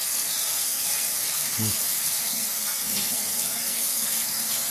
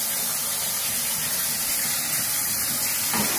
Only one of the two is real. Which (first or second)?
second